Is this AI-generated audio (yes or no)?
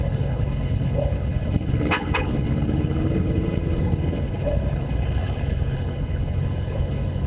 yes